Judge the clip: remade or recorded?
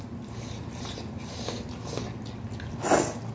recorded